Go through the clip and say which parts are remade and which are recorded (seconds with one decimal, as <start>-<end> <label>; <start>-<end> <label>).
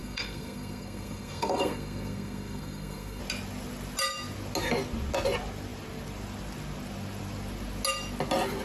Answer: 0.0-3.2 remade; 3.2-8.6 recorded